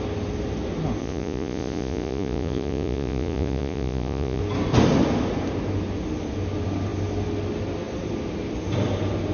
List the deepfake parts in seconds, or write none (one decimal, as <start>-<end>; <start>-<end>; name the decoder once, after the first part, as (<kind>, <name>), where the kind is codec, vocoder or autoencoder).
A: 1.0-4.4 (vocoder, Vocos)